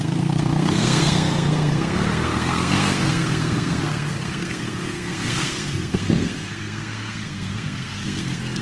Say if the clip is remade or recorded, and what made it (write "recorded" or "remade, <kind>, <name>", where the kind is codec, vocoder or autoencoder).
remade, codec, SNAC